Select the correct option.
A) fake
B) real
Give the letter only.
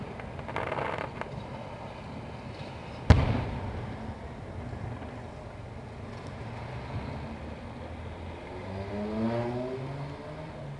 B